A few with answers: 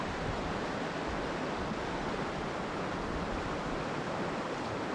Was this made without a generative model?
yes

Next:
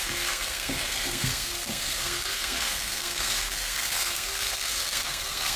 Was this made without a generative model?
no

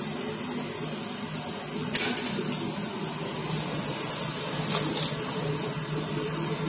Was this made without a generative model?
yes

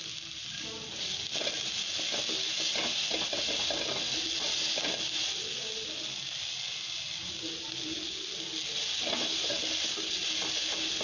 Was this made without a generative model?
yes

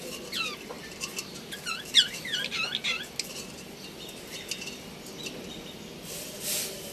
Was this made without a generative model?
yes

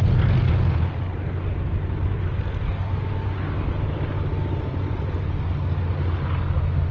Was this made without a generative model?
yes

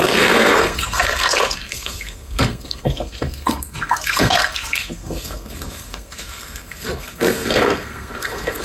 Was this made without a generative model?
no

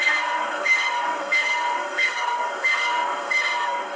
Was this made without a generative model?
no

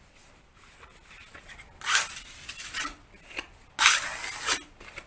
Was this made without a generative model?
yes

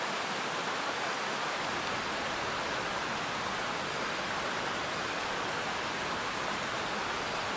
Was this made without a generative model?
yes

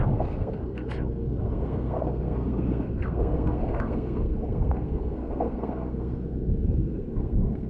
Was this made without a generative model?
no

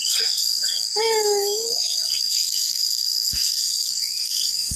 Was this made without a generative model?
no